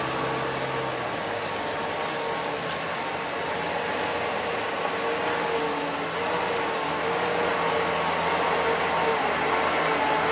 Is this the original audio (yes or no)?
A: yes